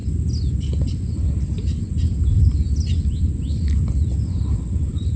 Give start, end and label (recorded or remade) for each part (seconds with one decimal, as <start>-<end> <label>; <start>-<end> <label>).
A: 0.0-5.2 recorded